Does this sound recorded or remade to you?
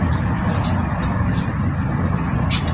recorded